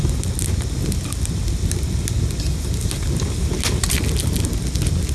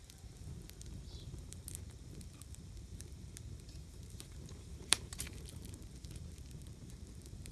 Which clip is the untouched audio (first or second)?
first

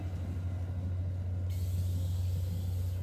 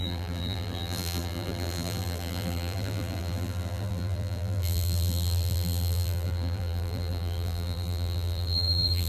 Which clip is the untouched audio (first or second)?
first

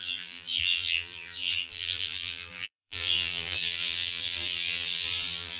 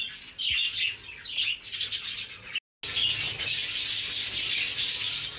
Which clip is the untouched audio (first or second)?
second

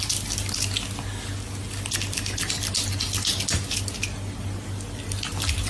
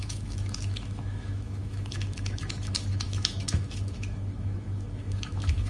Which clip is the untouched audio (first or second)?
first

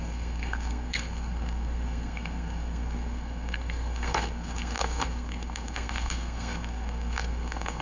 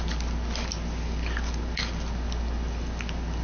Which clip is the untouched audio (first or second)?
second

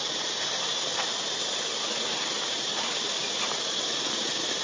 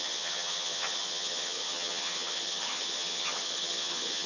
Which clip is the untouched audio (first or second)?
first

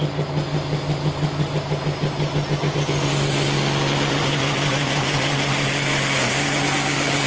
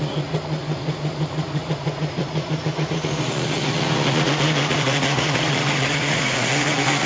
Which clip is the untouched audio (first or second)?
first